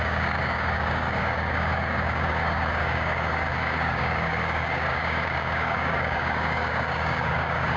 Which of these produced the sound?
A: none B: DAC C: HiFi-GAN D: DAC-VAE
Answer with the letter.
B